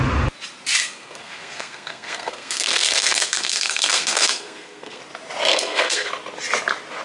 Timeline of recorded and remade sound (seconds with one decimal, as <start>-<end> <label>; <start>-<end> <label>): 0.0-0.8 recorded; 0.8-5.0 remade; 5.0-5.5 recorded; 5.5-6.1 remade; 6.1-7.0 recorded